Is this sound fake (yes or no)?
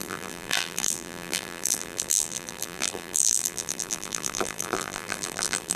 yes